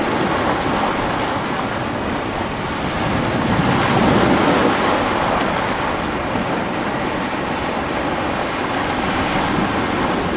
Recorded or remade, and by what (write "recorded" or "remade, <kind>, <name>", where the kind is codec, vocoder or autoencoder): recorded